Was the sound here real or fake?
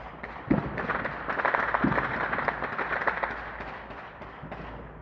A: real